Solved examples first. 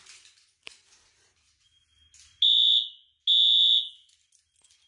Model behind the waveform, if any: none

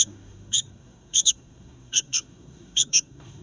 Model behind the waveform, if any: codec, SNAC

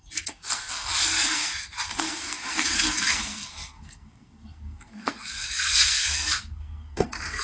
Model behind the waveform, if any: codec, SNAC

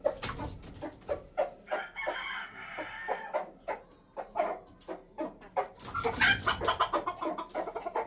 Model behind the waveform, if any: none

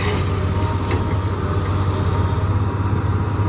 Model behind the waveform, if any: none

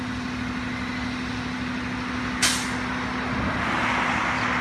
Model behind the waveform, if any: none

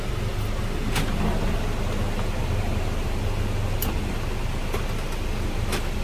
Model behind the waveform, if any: none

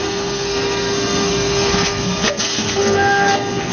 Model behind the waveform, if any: codec, SNAC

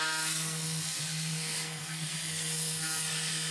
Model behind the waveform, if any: codec, SNAC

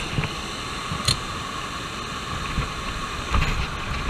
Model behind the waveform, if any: none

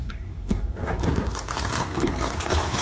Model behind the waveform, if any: codec, SNAC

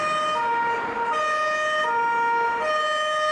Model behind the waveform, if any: none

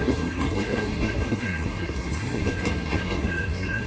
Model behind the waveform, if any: codec, SNAC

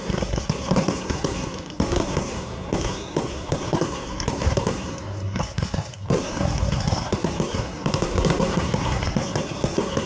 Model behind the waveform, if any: codec, SNAC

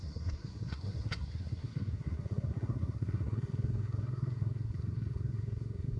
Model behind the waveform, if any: codec, SNAC